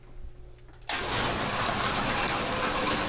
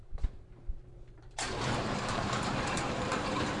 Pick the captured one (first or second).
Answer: first